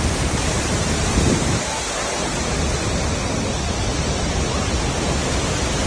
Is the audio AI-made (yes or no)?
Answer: no